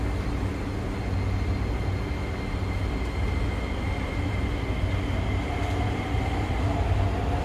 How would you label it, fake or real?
real